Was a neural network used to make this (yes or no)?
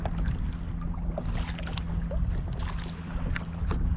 no